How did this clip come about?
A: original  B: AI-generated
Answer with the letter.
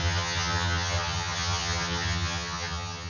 B